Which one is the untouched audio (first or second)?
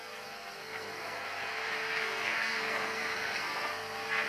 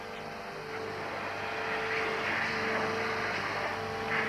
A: second